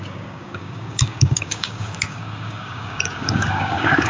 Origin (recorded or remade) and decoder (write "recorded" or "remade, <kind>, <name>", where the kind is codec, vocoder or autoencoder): remade, codec, DAC